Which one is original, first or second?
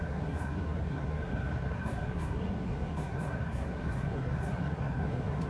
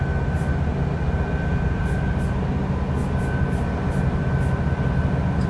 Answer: second